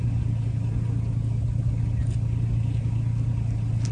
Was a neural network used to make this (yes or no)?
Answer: no